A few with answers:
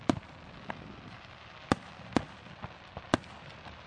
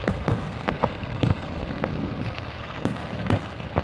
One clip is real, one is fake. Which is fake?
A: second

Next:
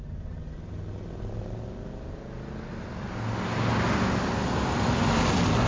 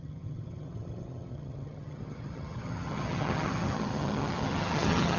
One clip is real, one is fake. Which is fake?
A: second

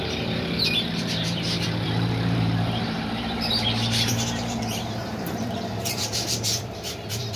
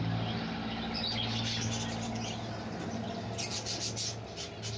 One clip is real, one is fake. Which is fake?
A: first